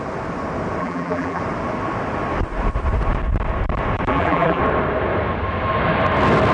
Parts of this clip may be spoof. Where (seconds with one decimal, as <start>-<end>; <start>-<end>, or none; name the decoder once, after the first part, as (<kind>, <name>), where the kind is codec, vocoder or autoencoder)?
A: 0.8-1.4 (vocoder, BigVGAN v2); 4.1-4.6